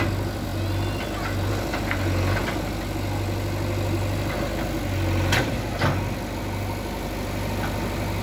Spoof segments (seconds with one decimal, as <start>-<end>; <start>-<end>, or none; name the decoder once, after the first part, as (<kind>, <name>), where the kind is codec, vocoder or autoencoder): none